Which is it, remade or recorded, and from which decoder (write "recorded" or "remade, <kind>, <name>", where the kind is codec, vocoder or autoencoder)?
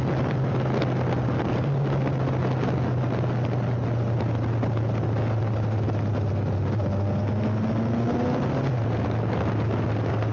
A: recorded